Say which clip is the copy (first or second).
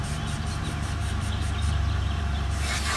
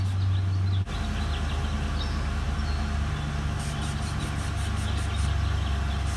first